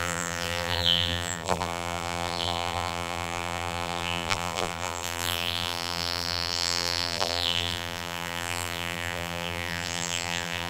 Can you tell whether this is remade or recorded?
remade